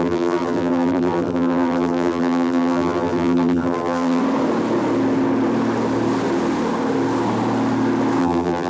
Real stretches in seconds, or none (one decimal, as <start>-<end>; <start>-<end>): 4.2-8.2